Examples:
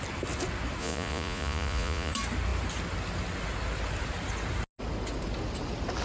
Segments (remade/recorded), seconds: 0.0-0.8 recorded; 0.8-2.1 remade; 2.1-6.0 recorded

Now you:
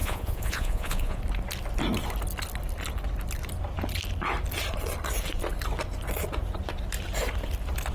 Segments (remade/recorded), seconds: 0.0-1.2 remade; 1.2-7.9 recorded